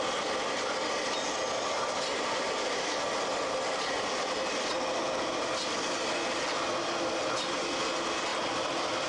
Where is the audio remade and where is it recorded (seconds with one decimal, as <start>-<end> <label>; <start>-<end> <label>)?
0.0-9.1 recorded